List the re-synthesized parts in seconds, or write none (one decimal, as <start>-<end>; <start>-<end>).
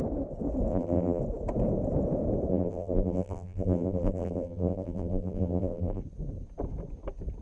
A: 0.7-1.2; 2.5-6.0